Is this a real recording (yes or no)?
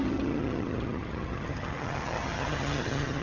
no